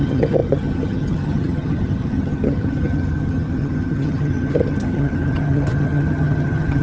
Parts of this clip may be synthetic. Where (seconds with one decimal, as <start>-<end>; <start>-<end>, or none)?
0.0-6.8